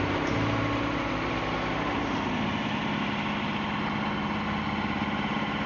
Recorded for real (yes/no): yes